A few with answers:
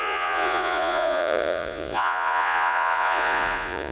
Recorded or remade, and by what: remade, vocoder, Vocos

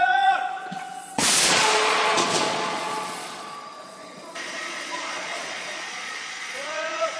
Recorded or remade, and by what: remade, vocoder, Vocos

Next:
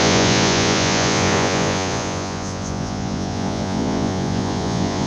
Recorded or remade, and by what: remade, vocoder, Vocos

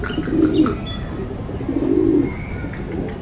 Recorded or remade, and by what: recorded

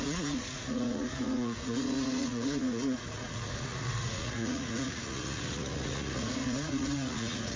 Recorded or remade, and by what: remade, vocoder, Vocos